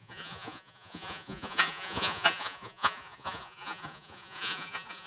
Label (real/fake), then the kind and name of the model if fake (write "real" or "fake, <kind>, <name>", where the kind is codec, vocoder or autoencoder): fake, vocoder, Vocos